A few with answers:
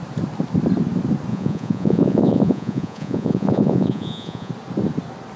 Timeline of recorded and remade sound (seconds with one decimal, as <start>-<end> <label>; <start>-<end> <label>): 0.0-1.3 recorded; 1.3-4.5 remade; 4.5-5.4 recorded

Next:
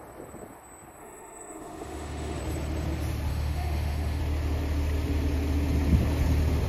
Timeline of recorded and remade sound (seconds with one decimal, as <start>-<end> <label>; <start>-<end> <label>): 0.0-1.0 recorded; 1.0-2.4 remade; 2.4-3.3 recorded; 3.3-4.2 remade; 4.2-6.7 recorded

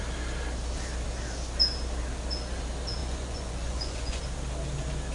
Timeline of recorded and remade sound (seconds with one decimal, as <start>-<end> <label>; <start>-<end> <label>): 0.0-3.0 recorded; 3.0-4.2 remade; 4.2-5.1 recorded